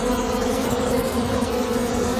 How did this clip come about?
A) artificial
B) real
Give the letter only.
A